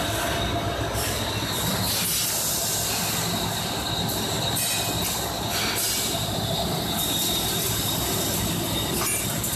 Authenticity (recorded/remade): recorded